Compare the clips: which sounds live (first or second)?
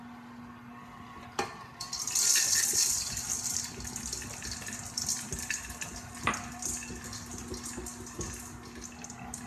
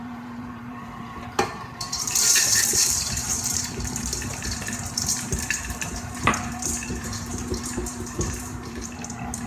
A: first